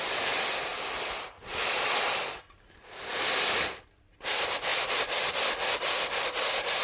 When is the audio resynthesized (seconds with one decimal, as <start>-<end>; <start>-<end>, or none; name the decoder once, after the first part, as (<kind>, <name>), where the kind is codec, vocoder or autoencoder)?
none